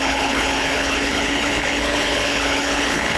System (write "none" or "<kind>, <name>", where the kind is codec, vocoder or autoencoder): codec, HILCodec